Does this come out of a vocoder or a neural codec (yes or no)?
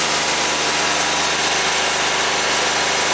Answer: no